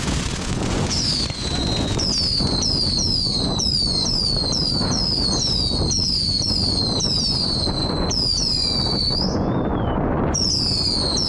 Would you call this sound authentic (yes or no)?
no